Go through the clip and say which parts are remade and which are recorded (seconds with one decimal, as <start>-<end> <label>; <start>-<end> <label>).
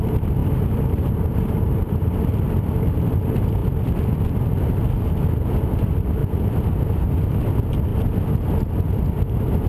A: 0.0-0.4 recorded; 0.4-2.1 remade; 2.1-6.2 recorded; 6.2-6.7 remade; 6.7-9.7 recorded